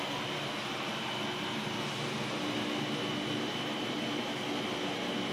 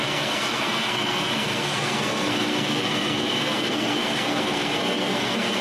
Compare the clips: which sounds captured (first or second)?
first